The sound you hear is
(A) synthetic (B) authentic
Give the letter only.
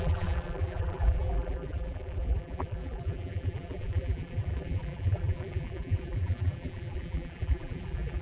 A